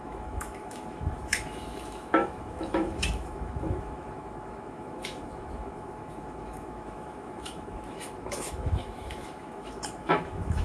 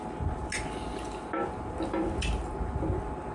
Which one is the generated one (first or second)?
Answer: first